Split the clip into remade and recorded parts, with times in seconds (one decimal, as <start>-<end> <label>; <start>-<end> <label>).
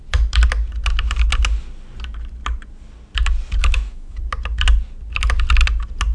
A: 0.0-3.6 recorded; 3.6-4.2 remade; 4.2-6.1 recorded